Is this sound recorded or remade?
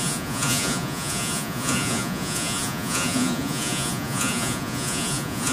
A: remade